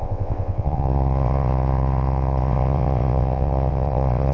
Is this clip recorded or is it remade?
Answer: remade